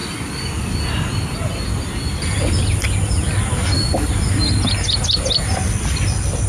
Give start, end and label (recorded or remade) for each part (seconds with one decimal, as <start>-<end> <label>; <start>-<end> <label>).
0.0-6.5 recorded